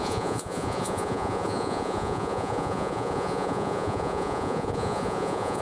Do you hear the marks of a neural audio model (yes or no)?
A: yes